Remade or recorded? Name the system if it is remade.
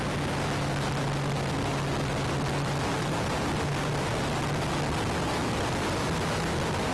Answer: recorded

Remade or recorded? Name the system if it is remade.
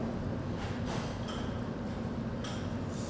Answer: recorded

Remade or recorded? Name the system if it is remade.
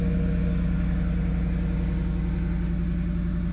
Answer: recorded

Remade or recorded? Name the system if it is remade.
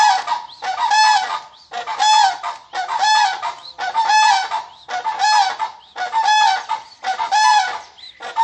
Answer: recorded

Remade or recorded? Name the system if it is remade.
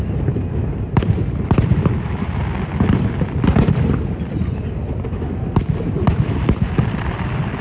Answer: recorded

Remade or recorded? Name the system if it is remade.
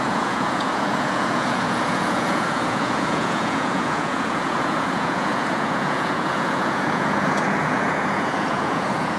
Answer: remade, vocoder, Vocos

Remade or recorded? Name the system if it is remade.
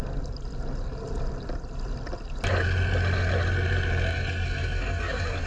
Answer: recorded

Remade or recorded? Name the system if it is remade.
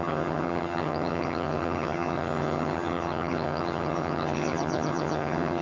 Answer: remade, vocoder, HiFi-GAN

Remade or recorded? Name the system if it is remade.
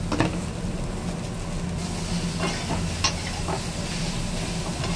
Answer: recorded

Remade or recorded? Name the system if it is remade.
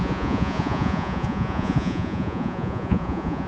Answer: remade, vocoder, Vocos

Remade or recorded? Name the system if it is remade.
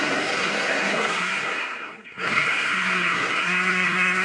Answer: remade, codec, SNAC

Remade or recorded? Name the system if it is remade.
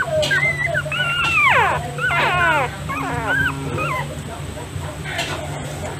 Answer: recorded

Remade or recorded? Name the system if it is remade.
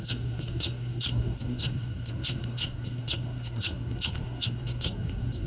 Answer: remade, codec, SNAC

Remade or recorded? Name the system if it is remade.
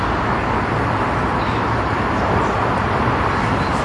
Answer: recorded